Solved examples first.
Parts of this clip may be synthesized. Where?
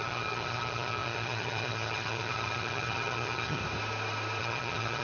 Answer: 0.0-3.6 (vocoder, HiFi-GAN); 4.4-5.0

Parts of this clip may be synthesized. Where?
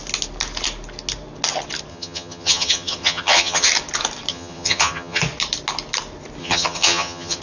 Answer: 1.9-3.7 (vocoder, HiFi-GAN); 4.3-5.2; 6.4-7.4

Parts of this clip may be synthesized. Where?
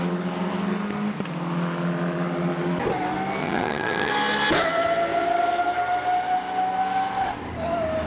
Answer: 3.4-4.1 (vocoder, HiFi-GAN)